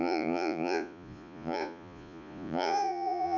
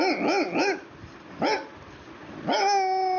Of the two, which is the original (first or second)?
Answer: second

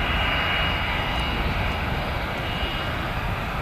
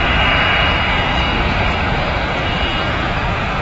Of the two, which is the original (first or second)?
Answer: first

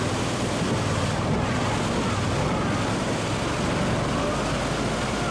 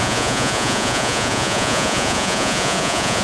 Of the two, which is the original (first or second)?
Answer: first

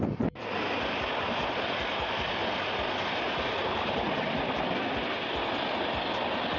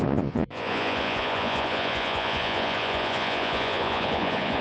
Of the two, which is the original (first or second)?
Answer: first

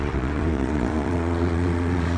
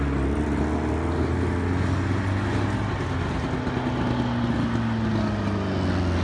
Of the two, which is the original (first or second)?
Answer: second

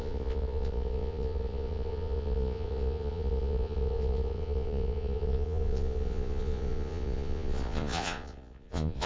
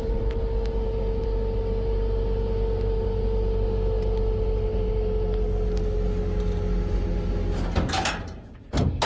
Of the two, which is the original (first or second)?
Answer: second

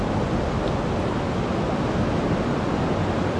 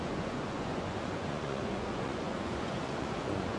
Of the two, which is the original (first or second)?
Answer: first